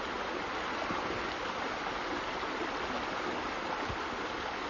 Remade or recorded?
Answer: recorded